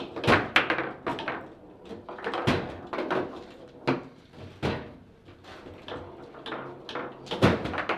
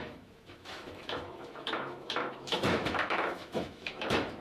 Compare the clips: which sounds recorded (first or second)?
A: first